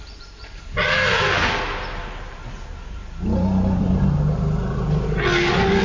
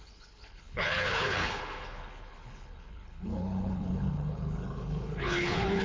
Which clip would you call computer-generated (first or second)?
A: second